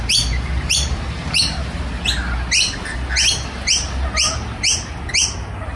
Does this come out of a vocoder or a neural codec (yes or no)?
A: no